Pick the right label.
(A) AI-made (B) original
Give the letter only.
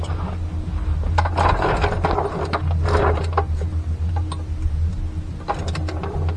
B